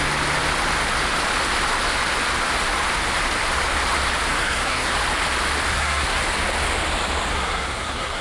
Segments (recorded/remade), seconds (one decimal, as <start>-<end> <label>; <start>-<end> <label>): 0.0-4.3 recorded; 4.3-4.9 remade; 4.9-5.7 recorded; 5.7-6.2 remade; 6.2-7.3 recorded; 7.3-8.2 remade